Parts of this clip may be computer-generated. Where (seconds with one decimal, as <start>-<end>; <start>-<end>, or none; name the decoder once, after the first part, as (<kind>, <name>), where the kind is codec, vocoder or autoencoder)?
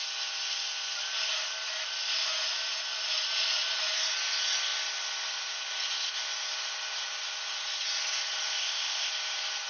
8.6-9.1 (codec, ZipCodec)